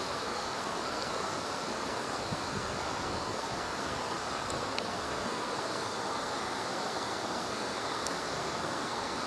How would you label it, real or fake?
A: fake